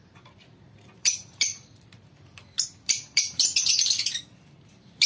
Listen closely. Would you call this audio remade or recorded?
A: remade